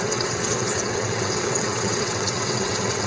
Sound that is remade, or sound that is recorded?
remade